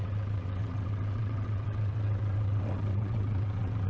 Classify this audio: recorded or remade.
remade